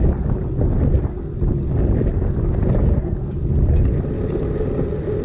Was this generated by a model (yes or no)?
no